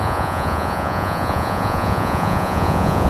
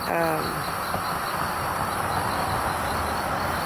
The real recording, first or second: second